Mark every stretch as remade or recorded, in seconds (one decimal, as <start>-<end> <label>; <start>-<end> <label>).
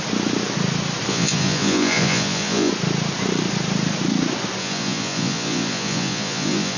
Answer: 0.0-1.1 recorded; 1.1-2.7 remade; 2.7-4.6 recorded; 4.6-6.8 remade